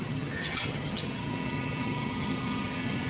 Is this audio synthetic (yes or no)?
yes